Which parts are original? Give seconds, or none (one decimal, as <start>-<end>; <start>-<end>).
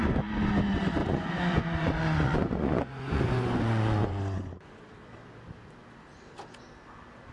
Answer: 0.5-1.0; 4.8-7.3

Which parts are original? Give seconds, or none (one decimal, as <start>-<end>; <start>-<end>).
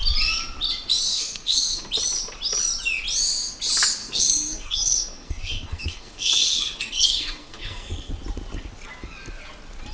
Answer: 0.0-1.1; 1.8-4.0; 8.1-9.9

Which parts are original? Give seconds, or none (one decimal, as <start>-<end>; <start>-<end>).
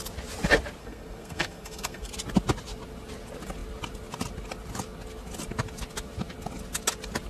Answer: 0.0-0.8; 2.1-7.3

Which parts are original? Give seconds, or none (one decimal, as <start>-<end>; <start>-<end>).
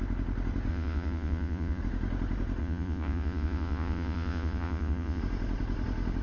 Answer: 0.0-0.7; 1.8-2.6; 5.2-6.2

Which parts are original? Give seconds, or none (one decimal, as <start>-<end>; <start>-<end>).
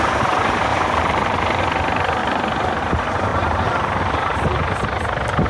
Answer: 0.0-0.7; 1.6-3.3; 4.0-5.5